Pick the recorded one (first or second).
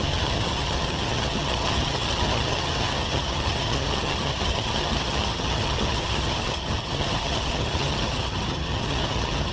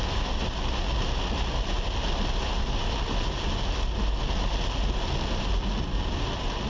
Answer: second